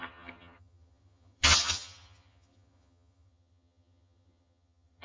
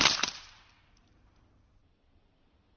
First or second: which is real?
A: second